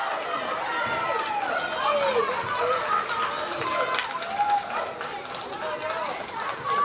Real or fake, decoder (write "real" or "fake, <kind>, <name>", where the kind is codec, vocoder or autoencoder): real